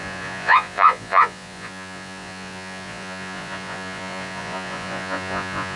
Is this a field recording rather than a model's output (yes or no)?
no